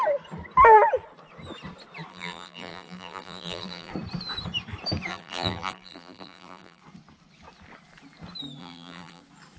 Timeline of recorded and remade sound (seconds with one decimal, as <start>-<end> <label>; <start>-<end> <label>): 0.0-2.1 recorded; 2.1-3.9 remade; 3.9-5.1 recorded; 5.1-6.8 remade; 6.8-8.6 recorded; 8.6-9.2 remade; 9.2-9.6 recorded